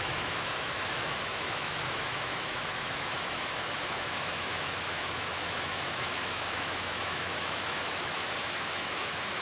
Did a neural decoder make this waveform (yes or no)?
yes